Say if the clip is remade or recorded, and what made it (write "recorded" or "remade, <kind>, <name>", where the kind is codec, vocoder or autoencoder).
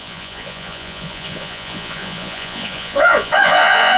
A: remade, vocoder, Vocos